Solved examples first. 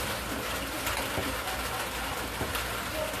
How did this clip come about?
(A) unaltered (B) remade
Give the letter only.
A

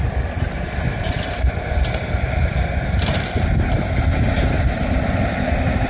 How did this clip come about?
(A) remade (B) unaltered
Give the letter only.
B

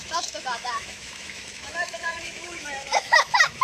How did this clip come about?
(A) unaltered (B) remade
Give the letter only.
B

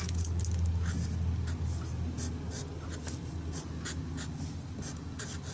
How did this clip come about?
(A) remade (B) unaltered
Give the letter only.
B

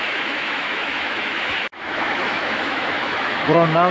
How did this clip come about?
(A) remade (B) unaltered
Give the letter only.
A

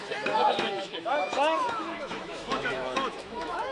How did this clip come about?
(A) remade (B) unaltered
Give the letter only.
A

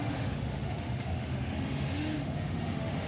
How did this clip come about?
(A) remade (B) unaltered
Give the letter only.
A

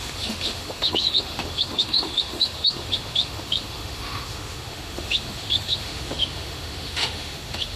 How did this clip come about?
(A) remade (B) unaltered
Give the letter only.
A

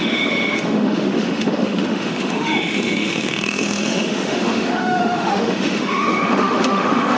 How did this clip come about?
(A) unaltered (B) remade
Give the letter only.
B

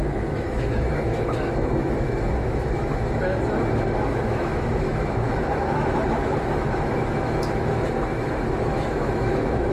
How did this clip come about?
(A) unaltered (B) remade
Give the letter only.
B